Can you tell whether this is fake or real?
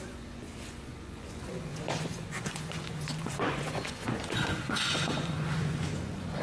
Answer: fake